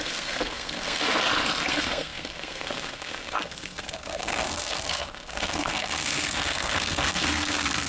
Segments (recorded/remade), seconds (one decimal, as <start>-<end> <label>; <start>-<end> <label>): 0.0-1.0 remade; 1.0-1.7 recorded; 1.7-7.9 remade